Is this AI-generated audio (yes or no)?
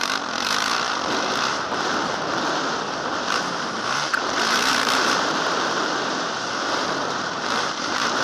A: yes